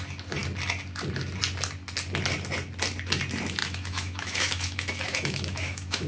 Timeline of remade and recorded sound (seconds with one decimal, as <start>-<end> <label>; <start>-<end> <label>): 0.0-3.6 recorded; 3.6-6.1 remade